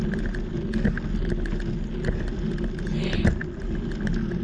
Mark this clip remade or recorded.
recorded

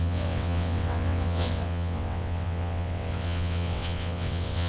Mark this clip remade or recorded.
remade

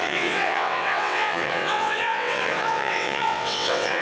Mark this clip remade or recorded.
remade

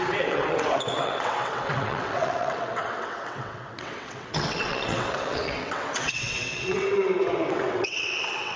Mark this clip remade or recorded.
remade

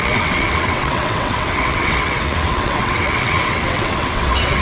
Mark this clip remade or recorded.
remade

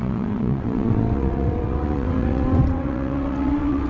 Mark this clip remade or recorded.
remade